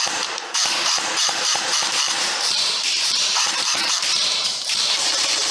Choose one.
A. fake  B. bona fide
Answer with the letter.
A